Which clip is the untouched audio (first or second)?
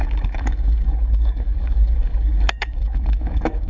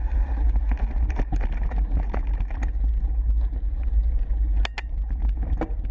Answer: second